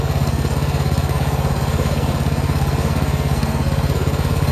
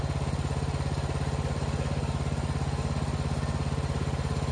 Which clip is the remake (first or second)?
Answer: first